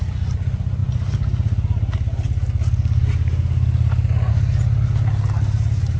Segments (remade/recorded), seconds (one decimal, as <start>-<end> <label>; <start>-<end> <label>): 0.0-6.0 recorded